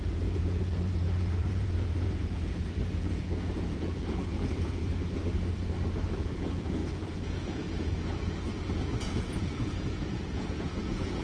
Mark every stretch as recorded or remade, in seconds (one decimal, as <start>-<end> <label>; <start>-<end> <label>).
0.0-4.8 remade; 4.8-6.1 recorded; 6.1-11.2 remade